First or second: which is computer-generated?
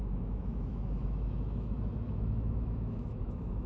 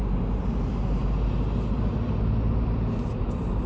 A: first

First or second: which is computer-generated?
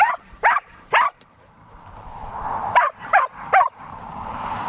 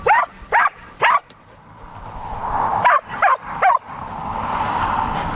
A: first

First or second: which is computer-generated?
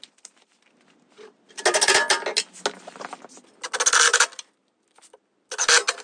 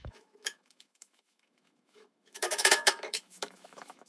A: second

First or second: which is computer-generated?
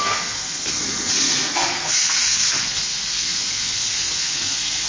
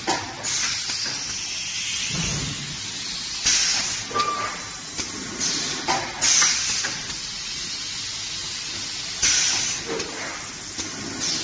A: first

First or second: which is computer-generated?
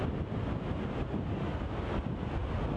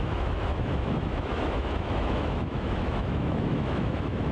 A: second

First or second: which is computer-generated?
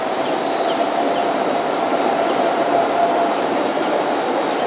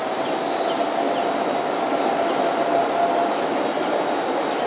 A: first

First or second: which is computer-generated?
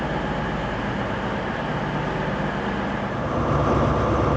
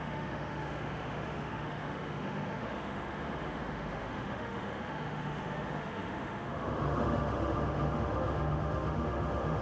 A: second